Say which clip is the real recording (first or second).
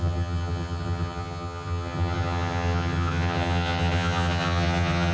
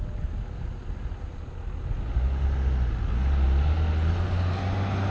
second